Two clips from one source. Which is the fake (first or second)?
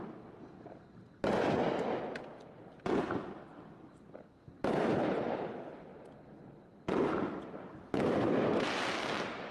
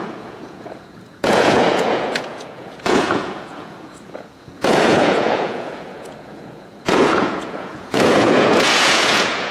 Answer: second